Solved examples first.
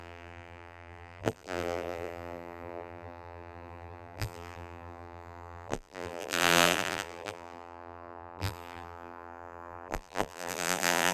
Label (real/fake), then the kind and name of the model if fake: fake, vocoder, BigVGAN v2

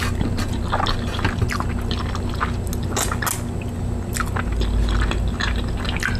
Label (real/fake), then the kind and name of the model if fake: real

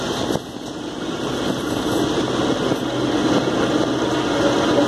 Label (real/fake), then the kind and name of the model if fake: real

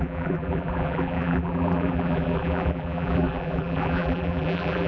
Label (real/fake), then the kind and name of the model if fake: fake, vocoder, BigVGAN v2